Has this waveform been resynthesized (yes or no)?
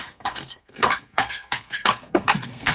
yes